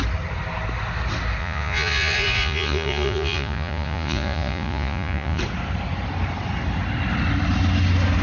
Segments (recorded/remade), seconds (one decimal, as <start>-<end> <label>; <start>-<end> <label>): 0.0-1.4 recorded; 1.4-5.4 remade; 5.4-8.2 recorded